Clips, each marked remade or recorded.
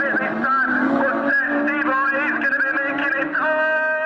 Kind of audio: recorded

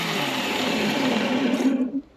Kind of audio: remade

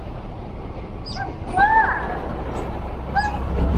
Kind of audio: recorded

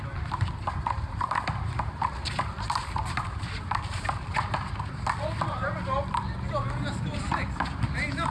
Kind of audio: remade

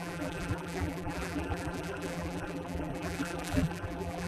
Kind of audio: remade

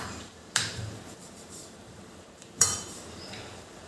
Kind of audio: remade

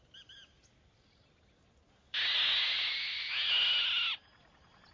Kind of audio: recorded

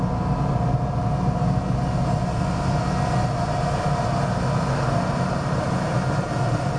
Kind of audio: recorded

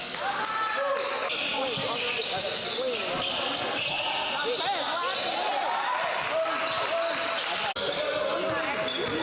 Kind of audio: recorded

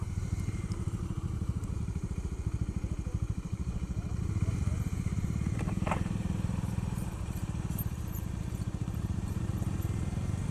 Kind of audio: remade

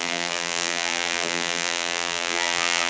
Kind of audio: remade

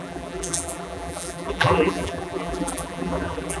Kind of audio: remade